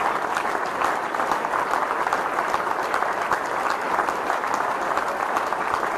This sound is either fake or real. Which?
real